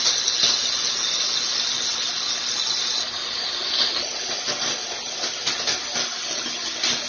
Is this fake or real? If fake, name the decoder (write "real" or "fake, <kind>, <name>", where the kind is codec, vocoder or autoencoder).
real